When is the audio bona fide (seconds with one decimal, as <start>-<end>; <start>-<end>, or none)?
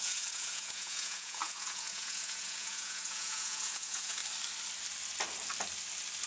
4.2-6.3